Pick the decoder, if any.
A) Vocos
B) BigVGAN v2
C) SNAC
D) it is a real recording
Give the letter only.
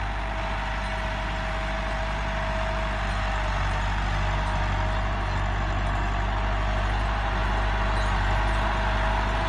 D